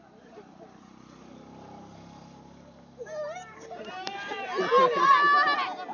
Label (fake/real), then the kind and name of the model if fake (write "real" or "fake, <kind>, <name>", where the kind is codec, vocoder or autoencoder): real